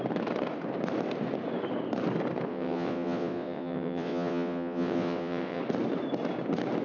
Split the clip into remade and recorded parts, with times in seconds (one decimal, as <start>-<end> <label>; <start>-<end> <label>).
0.0-2.5 recorded; 2.5-5.6 remade; 5.6-6.8 recorded